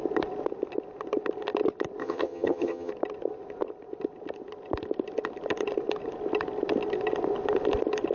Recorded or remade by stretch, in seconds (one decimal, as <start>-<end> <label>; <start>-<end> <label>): 0.0-2.0 recorded; 2.0-2.9 remade; 2.9-8.1 recorded